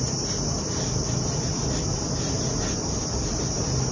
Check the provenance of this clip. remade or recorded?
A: recorded